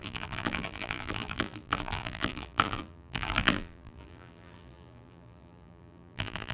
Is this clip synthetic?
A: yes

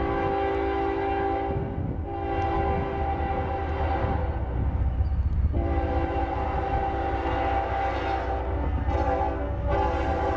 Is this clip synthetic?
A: no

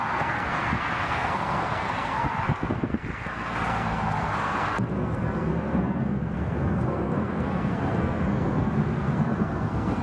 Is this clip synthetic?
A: yes